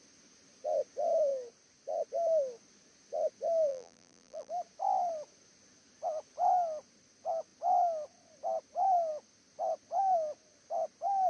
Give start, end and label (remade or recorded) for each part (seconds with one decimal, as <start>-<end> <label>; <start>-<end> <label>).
0.0-3.7 recorded; 3.7-4.5 remade; 4.5-11.3 recorded